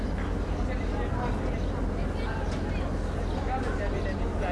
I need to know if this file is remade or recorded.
recorded